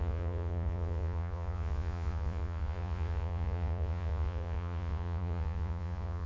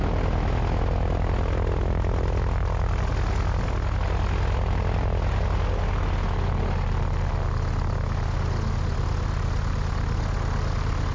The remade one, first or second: first